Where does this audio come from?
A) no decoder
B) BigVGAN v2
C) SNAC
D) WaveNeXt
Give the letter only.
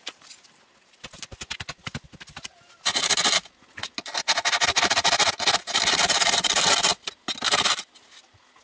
A